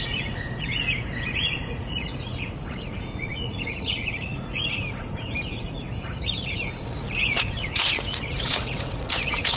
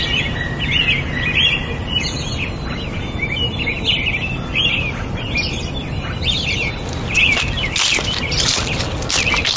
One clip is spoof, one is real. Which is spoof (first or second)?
first